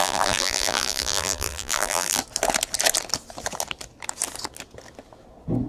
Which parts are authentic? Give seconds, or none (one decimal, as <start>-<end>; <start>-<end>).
2.2-5.7